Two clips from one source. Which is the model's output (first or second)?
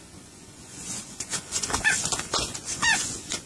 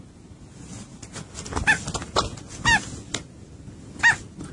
first